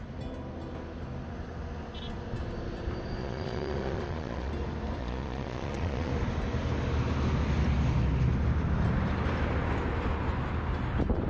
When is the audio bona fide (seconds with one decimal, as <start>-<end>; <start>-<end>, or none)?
0.0-3.2; 4.5-5.0; 6.1-11.3